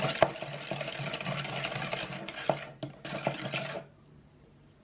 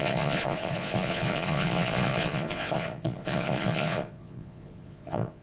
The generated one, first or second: second